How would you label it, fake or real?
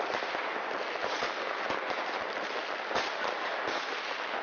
real